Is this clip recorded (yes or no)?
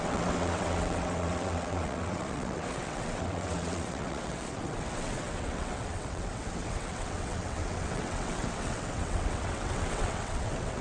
no